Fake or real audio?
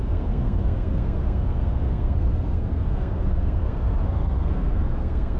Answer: fake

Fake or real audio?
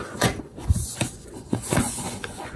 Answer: fake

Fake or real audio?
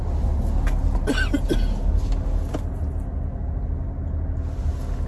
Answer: real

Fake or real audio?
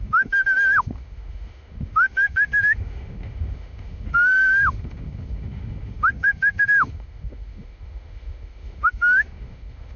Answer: fake